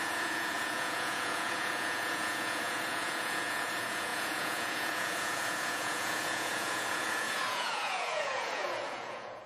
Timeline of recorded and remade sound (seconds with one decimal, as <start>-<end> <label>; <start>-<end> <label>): 0.0-9.5 remade

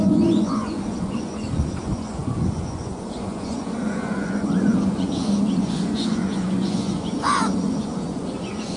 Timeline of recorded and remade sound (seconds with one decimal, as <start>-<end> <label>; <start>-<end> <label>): 0.0-8.8 remade

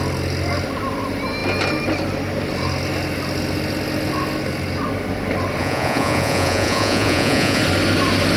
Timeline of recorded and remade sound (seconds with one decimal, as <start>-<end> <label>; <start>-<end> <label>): 0.0-5.6 recorded; 5.6-7.6 remade; 7.6-8.4 recorded

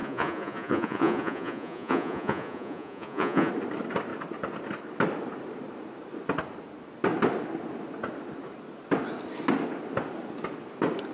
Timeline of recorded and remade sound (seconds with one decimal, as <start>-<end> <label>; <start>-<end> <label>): 0.0-3.5 remade; 3.5-11.1 recorded

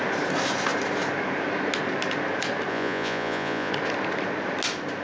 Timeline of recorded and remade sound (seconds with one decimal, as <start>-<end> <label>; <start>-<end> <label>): 0.0-2.7 recorded; 2.7-3.7 remade; 3.7-5.0 recorded